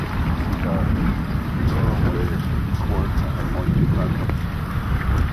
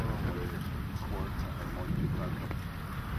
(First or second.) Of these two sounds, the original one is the second